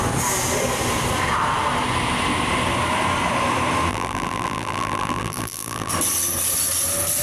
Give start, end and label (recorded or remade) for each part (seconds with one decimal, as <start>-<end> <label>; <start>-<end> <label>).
0.0-3.9 recorded; 3.9-5.9 remade; 5.9-7.2 recorded